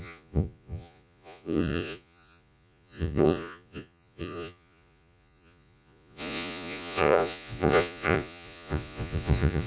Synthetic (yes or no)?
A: yes